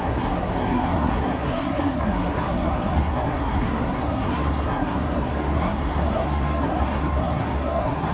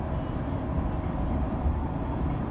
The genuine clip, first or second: second